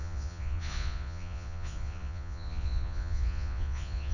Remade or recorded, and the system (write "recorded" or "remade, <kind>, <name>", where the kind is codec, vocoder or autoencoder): remade, vocoder, Vocos